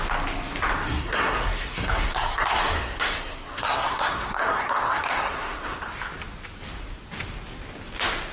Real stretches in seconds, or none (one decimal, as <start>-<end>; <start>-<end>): 0.0-0.8; 5.8-8.3